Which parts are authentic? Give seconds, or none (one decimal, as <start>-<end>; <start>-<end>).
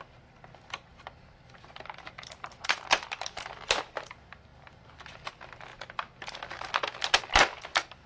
0.0-0.9; 3.8-4.5; 5.2-8.1